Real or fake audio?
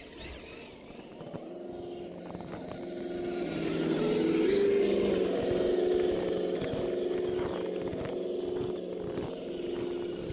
real